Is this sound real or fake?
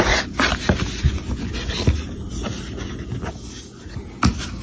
real